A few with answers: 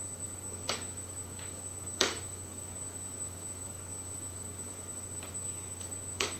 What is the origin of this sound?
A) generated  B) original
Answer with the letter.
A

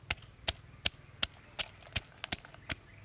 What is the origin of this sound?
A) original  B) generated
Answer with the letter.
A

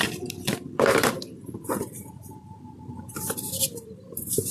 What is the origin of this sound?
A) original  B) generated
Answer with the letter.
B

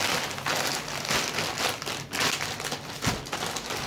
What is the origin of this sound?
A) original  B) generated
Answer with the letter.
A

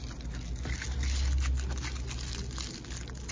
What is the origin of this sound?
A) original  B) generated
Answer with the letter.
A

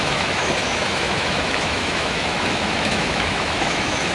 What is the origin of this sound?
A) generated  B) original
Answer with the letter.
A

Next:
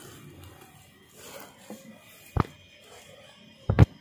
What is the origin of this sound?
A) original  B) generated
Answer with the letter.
A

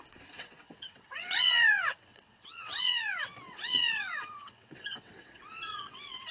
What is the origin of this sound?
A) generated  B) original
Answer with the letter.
A